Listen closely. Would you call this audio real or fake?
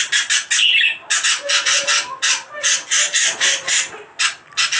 real